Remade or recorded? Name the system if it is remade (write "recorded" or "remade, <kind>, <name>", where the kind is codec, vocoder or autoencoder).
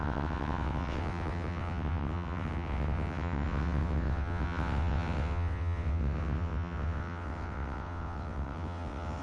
remade, vocoder, WaveNeXt